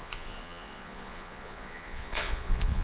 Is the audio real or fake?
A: fake